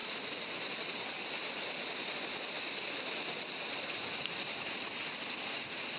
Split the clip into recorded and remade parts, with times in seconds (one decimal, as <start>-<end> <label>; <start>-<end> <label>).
0.0-6.0 recorded